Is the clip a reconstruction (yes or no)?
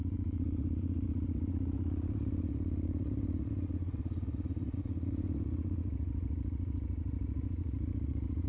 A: yes